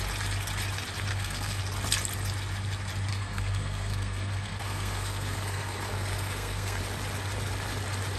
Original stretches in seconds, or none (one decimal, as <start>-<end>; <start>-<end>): 0.0-1.1; 1.6-3.1; 6.8-8.2